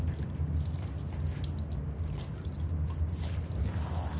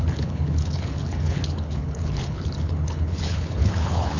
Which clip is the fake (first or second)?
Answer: second